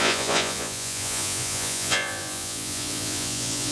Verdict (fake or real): fake